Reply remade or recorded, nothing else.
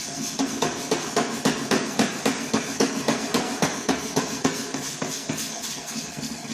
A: remade